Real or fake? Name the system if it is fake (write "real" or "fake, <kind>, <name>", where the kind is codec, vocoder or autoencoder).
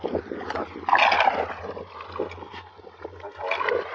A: real